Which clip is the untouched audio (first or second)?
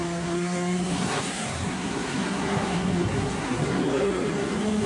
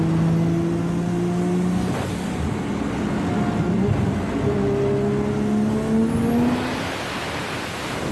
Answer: second